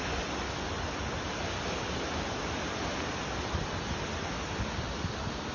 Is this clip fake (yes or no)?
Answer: no